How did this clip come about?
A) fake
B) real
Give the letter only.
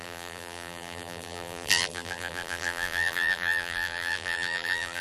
A